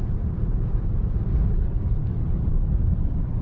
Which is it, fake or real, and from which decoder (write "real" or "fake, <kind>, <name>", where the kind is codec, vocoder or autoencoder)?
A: fake, vocoder, BigVGAN v2